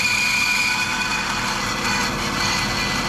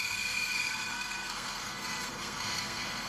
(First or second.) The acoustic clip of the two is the first